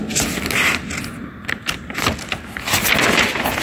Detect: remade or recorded recorded